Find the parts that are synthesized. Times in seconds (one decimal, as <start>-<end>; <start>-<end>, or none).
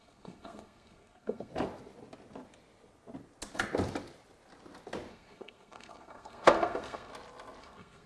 0.0-1.5; 5.1-7.1; 7.6-8.1